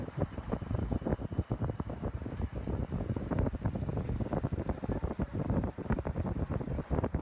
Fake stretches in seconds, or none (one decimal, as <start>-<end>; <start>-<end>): 0.0-1.1; 5.1-7.2